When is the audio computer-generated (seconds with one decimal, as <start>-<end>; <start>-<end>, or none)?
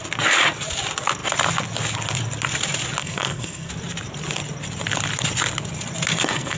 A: 3.0-3.7; 6.1-6.6